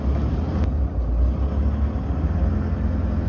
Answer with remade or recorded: recorded